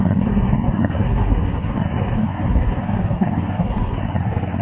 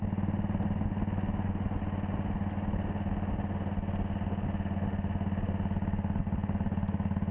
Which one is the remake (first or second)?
first